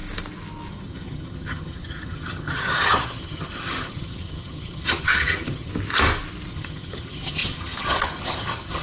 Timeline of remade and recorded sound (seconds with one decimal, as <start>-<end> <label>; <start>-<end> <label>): 0.0-0.7 recorded; 0.7-5.7 remade; 5.7-6.5 recorded; 6.5-8.8 remade